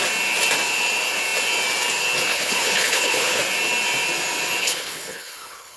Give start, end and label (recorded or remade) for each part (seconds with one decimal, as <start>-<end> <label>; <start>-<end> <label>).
0.0-2.3 recorded; 2.3-3.4 remade; 3.4-4.6 recorded; 4.6-5.8 remade